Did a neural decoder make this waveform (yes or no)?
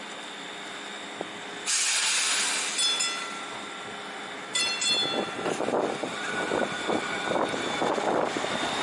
no